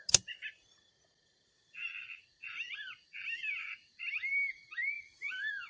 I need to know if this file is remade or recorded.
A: recorded